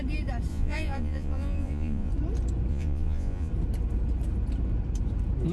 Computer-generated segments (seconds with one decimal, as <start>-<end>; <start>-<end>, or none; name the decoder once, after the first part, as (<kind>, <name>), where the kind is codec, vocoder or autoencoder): 0.5-2.1 (vocoder, Vocos); 2.7-3.5